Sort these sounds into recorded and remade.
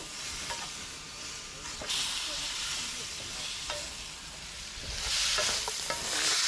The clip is recorded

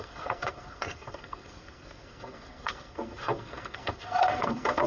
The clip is remade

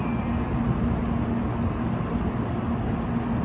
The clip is recorded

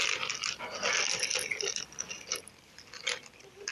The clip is recorded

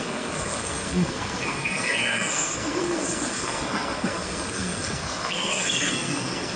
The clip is remade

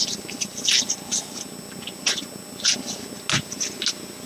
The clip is recorded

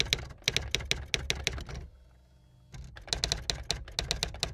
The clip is recorded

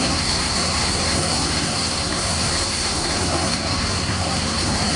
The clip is remade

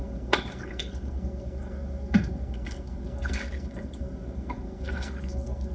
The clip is remade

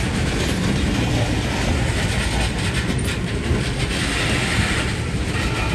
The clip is recorded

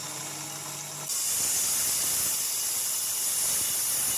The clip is recorded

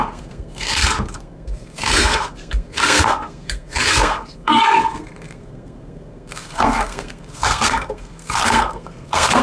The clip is remade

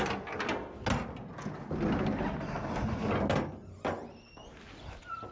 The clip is recorded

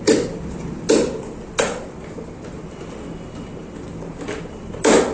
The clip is recorded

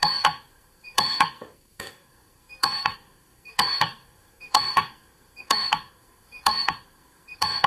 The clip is remade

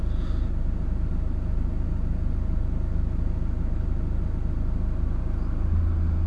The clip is recorded